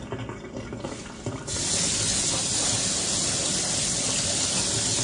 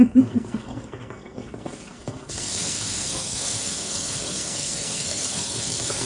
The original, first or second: first